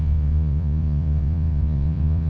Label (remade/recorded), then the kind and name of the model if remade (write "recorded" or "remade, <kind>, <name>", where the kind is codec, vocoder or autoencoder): remade, vocoder, Vocos